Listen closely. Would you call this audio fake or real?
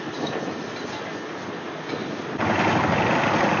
real